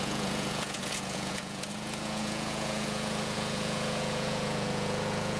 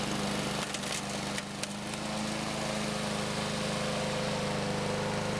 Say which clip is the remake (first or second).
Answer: first